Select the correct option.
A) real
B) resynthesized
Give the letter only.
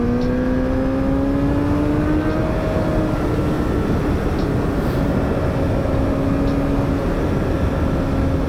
A